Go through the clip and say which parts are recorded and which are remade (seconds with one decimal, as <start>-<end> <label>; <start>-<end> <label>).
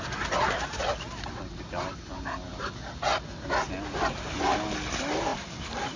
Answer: 0.0-2.5 recorded; 2.5-3.5 remade; 3.5-5.3 recorded; 5.3-6.0 remade